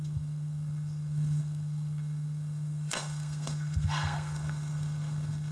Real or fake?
fake